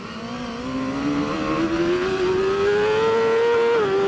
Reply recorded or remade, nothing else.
recorded